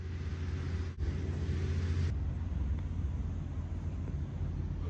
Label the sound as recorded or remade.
recorded